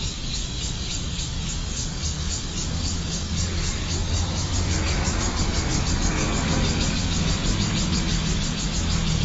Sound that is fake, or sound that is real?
fake